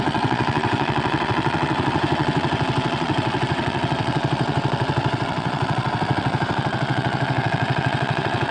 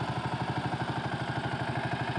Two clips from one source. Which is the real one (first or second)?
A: second